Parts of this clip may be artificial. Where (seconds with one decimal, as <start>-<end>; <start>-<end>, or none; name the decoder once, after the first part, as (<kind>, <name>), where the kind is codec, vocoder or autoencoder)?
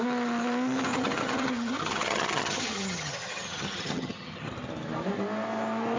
0.9-4.5 (vocoder, HiFi-GAN)